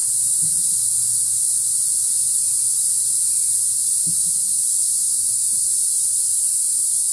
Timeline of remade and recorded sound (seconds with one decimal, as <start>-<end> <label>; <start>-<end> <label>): 0.0-0.7 remade; 0.7-7.1 recorded

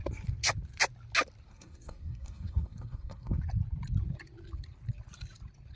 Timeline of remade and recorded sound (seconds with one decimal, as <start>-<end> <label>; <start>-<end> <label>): 0.0-1.5 recorded; 1.5-3.4 remade; 3.4-5.8 recorded

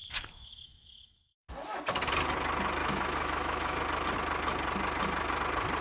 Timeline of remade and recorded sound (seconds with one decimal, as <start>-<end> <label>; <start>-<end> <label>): 0.0-1.5 remade; 1.5-2.8 recorded; 2.8-3.8 remade; 3.8-5.8 recorded